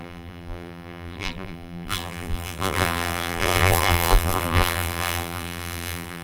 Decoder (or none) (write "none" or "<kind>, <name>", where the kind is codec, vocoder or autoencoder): vocoder, BigVGAN v2